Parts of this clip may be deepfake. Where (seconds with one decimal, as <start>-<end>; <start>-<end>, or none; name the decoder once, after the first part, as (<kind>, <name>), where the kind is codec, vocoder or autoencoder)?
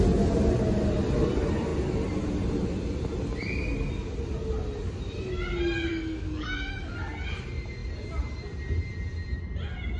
5.9-6.9 (codec, DAC)